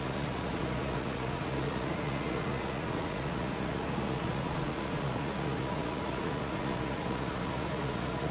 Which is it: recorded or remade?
remade